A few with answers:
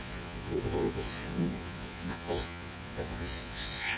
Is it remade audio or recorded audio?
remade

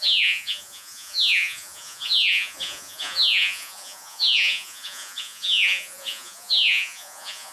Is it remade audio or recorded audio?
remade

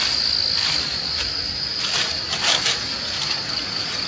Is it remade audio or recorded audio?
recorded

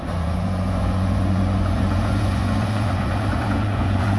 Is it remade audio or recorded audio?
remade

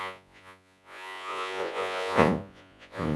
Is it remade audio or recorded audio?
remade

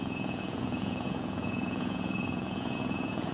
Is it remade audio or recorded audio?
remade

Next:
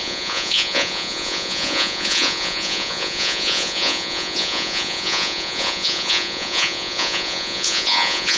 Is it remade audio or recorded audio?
remade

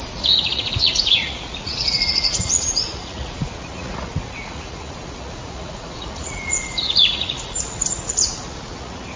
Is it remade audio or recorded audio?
remade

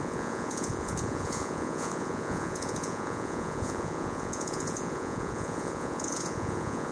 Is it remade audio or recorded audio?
remade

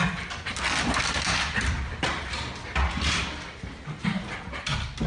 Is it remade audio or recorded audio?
recorded